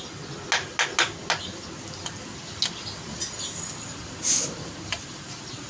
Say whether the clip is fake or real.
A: real